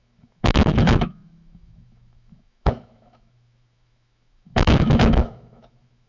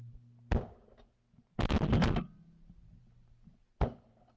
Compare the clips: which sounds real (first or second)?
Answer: second